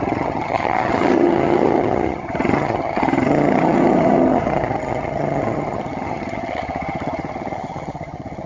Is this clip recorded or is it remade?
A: remade